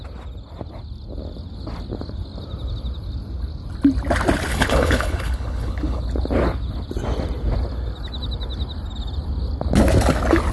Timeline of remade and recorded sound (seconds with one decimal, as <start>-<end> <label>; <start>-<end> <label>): 0.0-4.5 recorded; 4.5-6.0 remade; 6.0-10.5 recorded